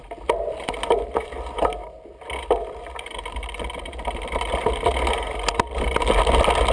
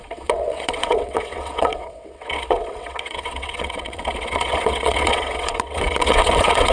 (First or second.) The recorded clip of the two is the first